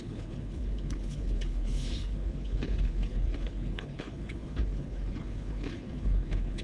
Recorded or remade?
remade